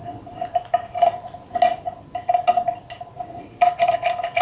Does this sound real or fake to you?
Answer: real